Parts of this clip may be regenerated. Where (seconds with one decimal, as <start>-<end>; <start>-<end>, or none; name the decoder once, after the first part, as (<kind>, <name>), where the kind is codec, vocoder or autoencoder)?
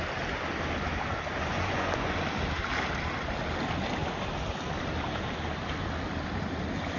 1.5-2.2 (vocoder, Vocos)